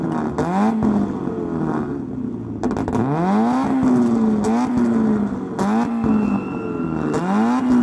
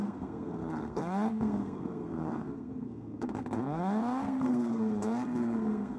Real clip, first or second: first